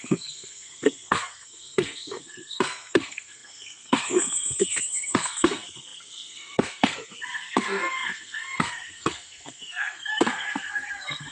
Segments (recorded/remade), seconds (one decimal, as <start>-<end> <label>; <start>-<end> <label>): 0.0-11.3 remade

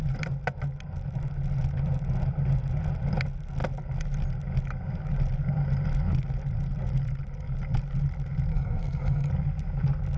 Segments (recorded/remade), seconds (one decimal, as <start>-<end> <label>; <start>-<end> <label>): 0.0-8.5 recorded; 8.5-9.3 remade; 9.3-10.2 recorded

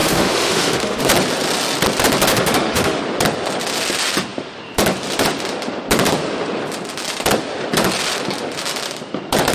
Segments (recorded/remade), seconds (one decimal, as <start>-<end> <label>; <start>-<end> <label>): 0.0-1.0 remade; 1.0-2.3 recorded; 2.3-3.0 remade; 3.0-9.5 recorded

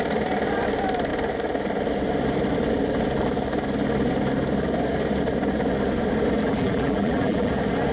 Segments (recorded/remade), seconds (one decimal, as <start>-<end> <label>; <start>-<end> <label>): 0.0-6.4 recorded; 6.4-7.5 remade; 7.5-7.9 recorded